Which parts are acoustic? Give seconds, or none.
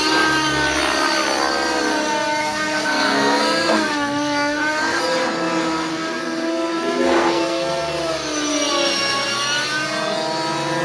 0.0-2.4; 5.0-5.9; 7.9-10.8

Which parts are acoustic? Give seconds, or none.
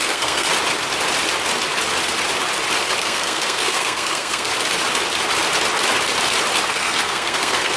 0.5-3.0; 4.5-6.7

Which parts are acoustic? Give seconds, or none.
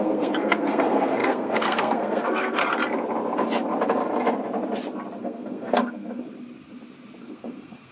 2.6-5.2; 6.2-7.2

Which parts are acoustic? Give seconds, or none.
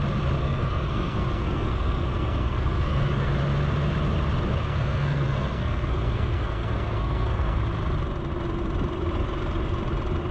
0.0-0.4; 3.3-4.6; 7.6-10.3